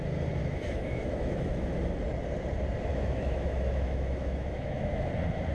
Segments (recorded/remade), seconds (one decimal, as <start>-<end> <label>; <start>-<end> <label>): 0.0-0.4 recorded; 0.4-1.8 remade; 1.8-2.9 recorded; 2.9-5.1 remade; 5.1-5.5 recorded